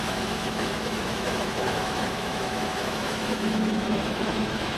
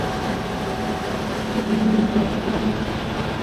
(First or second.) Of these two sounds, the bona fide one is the second